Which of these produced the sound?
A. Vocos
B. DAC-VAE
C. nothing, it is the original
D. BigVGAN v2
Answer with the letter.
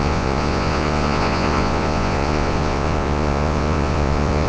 A